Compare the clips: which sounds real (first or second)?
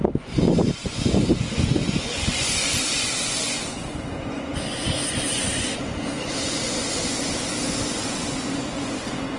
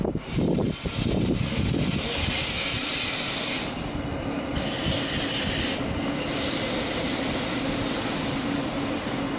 second